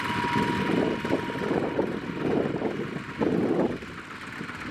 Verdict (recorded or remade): recorded